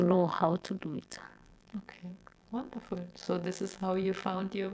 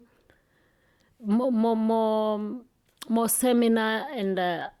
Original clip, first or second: second